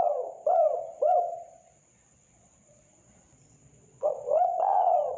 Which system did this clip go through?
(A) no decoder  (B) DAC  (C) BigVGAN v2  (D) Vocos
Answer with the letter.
D